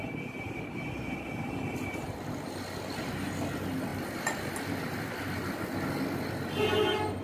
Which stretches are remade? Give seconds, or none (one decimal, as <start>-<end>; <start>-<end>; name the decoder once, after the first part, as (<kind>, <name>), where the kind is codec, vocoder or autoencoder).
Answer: none